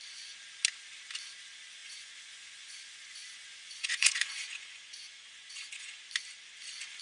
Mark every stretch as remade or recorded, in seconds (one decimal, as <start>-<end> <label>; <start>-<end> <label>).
0.0-1.8 recorded; 1.8-6.0 remade; 6.0-7.0 recorded